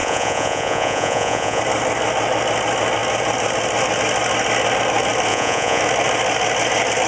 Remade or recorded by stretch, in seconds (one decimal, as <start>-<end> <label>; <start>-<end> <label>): 0.0-1.6 remade; 1.6-5.3 recorded; 5.3-5.8 remade; 5.8-7.1 recorded